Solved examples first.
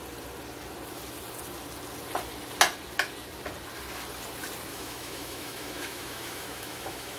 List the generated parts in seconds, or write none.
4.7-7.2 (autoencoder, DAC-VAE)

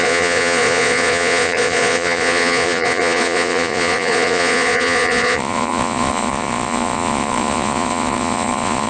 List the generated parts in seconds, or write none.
0.0-8.9 (vocoder, Vocos)

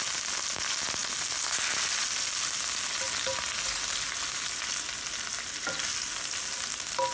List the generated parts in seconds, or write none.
none

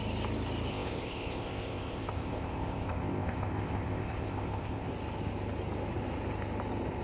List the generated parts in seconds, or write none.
0.7-4.9 (codec, ZipCodec)

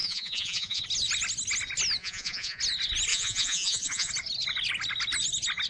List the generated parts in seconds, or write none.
0.0-0.8 (vocoder, Vocos); 2.0-2.6; 3.1-4.1

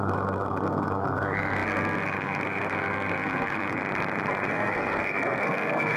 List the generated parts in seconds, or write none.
0.0-3.8 (codec, SNAC); 4.5-6.0

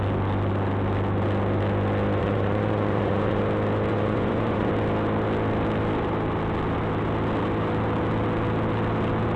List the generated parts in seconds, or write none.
2.2-3.4 (vocoder, Vocos); 3.9-4.7

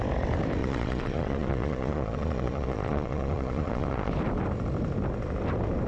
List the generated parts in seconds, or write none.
0.6-4.1 (vocoder, Vocos)